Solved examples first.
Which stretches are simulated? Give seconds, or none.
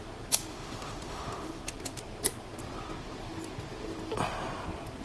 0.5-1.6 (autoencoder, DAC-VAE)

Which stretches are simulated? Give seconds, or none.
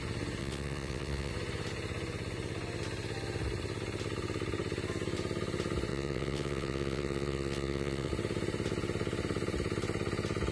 0.4-1.3 (vocoder, WaveNeXt); 5.9-8.1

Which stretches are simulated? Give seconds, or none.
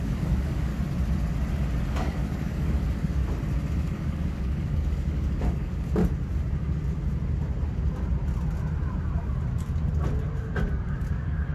0.0-0.7 (codec, DAC); 1.9-3.2; 3.7-6.0; 10.7-11.5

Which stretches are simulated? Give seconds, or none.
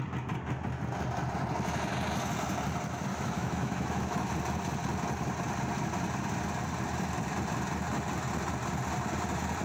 3.1-4.3 (autoencoder, DAC-VAE)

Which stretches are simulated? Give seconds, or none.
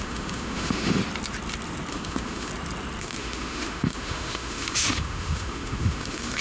0.0-1.0 (autoencoder, DAC-VAE); 1.9-2.5; 3.0-6.4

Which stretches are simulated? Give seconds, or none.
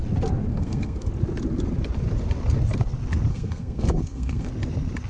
0.5-1.1 (codec, SNAC); 3.3-4.5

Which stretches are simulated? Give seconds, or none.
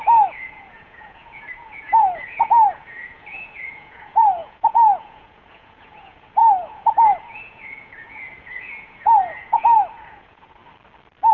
0.0-10.6 (vocoder, Vocos)